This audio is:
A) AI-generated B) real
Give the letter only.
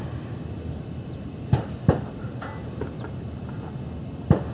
B